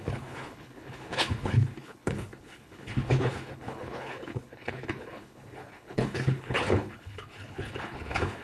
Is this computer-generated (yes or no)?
yes